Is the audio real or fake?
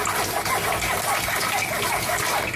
real